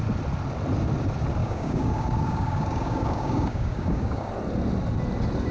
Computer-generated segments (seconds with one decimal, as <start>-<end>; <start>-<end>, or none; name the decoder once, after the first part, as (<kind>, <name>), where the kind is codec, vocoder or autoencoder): 1.4-4.3 (codec, DAC)